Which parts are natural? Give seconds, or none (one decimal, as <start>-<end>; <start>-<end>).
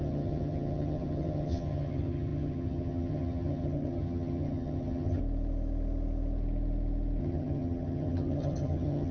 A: 5.2-7.2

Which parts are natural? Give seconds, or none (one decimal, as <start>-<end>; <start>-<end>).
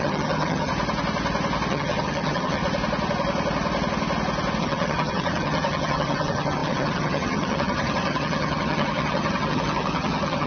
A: 0.7-1.7; 2.6-4.6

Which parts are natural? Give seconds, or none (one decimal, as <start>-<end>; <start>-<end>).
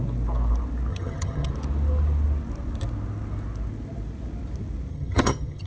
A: 0.0-0.9; 1.5-4.9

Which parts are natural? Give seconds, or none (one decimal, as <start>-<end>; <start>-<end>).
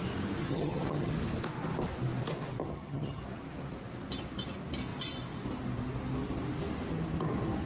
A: 0.0-0.4; 1.1-2.6; 3.2-7.7